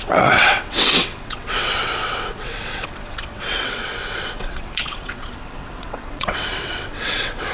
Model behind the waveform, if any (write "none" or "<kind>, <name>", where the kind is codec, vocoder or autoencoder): vocoder, WaveNeXt